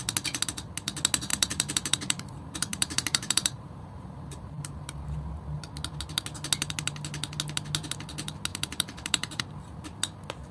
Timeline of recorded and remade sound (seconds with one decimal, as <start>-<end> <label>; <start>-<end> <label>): 0.0-1.3 recorded; 1.3-5.3 remade; 5.3-8.5 recorded; 8.5-9.4 remade; 9.4-10.5 recorded